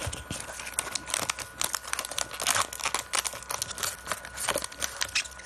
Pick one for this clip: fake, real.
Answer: real